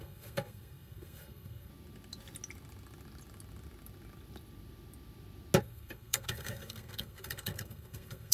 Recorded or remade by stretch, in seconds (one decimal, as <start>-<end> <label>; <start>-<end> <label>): 0.0-1.7 remade; 1.7-5.6 recorded; 5.6-8.3 remade